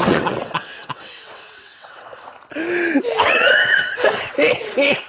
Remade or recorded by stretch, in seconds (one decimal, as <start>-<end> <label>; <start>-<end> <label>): 0.0-2.1 remade; 2.1-3.2 recorded; 3.2-5.1 remade